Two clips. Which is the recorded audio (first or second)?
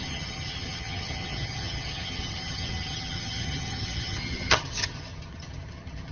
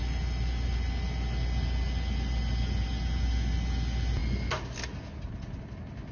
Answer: second